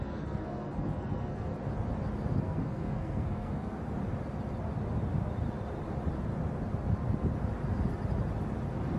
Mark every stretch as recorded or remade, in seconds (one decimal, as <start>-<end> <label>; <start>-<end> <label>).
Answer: 0.0-1.6 remade; 1.6-2.4 recorded; 2.4-3.8 remade; 3.8-9.0 recorded